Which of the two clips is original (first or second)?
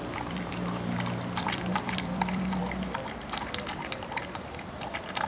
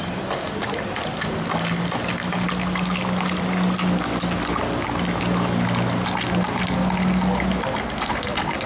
second